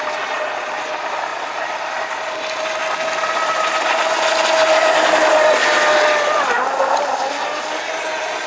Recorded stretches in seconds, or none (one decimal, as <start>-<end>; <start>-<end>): 0.0-8.5